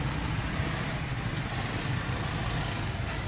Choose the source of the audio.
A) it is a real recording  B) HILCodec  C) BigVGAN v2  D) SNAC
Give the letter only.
A